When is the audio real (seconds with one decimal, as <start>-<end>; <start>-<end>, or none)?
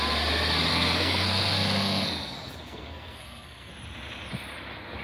0.0-0.7; 3.7-5.0